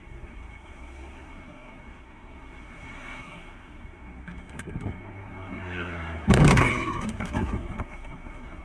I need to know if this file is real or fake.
fake